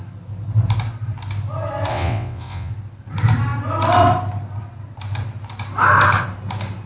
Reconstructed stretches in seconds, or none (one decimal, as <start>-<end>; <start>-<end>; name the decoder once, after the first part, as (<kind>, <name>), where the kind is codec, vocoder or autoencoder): 1.9-2.7 (vocoder, WaveNeXt)